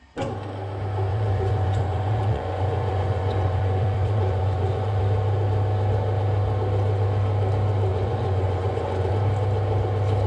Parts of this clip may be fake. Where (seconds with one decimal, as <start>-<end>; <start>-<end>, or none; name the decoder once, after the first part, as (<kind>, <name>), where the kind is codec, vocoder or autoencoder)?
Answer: 1.1-5.0 (vocoder, Vocos); 7.9-9.1